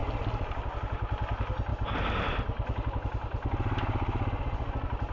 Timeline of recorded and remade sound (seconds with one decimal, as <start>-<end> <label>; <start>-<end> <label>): 0.0-5.1 recorded